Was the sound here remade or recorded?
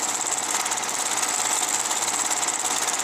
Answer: recorded